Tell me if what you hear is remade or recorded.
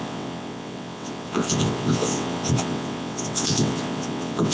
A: remade